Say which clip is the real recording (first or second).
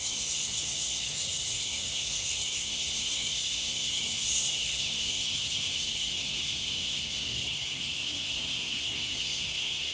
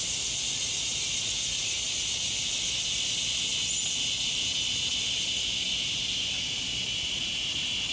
second